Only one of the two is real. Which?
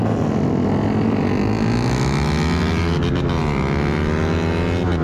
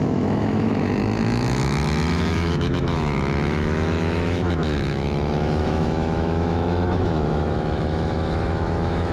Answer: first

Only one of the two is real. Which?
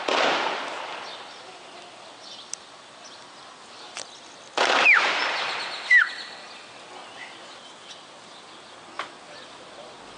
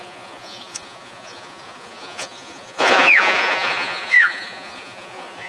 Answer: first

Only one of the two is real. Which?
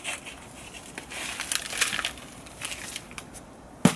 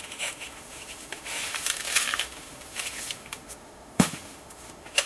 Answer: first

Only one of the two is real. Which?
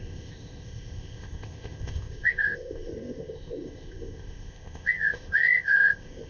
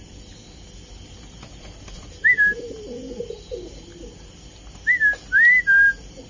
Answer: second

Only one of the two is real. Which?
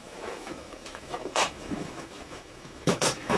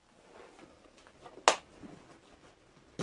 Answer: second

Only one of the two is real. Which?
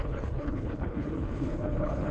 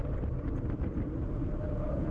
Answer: second